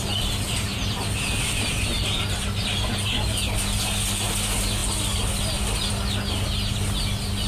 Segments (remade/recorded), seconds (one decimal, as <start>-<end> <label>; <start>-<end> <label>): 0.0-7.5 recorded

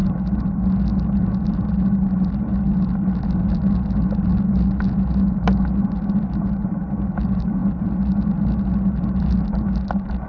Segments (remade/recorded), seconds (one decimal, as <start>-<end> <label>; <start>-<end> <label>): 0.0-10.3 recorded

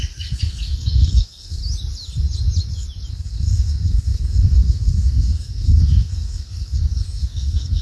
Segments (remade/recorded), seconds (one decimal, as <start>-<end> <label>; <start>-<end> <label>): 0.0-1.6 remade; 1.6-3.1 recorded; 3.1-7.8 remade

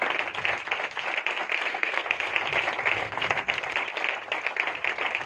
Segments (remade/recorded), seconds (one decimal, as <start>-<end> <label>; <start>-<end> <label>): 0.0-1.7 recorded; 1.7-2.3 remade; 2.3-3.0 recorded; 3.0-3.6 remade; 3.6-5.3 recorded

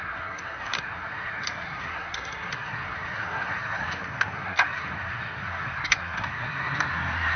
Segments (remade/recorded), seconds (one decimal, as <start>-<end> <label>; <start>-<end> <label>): 0.0-7.4 remade

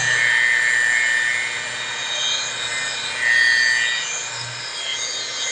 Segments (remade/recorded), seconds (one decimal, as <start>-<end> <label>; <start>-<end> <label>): 0.0-5.5 recorded